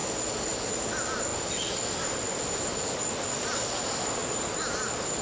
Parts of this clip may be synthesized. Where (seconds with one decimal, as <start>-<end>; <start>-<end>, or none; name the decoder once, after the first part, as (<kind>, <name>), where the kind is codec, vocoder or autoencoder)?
none